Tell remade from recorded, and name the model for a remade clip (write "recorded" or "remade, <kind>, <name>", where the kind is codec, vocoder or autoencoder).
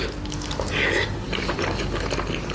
recorded